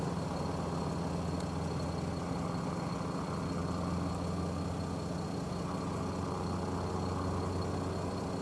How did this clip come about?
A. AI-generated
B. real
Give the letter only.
B